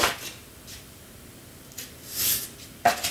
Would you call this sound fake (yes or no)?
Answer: no